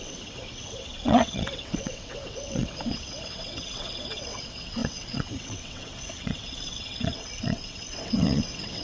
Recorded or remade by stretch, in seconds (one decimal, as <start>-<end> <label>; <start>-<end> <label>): 0.0-8.8 remade